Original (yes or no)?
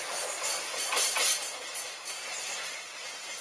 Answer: yes